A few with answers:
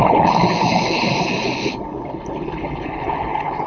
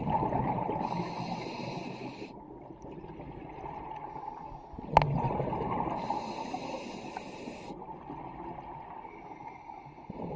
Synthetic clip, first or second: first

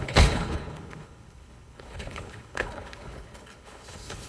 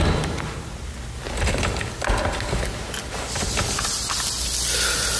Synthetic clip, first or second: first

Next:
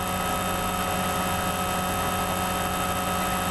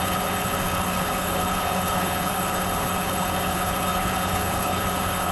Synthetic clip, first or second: second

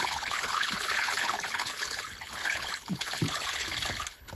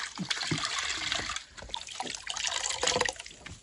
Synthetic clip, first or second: first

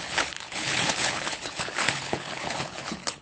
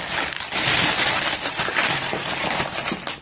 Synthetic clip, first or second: first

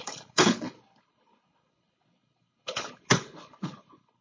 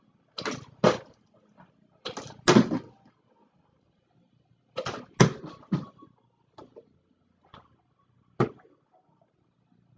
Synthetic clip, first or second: first